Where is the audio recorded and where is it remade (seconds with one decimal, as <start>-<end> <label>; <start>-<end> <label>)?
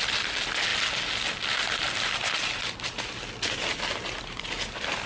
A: 0.0-5.1 recorded